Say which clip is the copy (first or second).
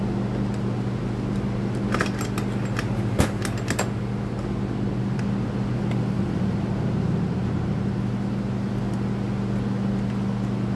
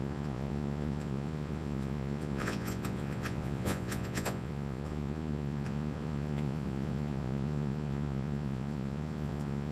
second